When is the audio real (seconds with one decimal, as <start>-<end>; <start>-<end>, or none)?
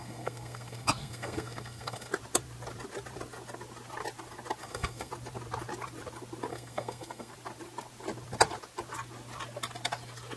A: 2.1-4.6; 5.1-6.5; 7.3-10.4